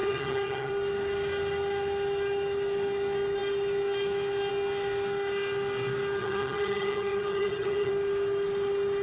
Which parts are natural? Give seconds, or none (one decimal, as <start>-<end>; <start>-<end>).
0.7-6.2; 7.9-9.0